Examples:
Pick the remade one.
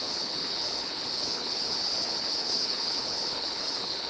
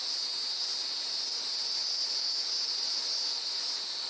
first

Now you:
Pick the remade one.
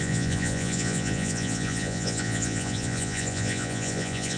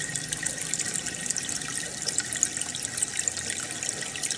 first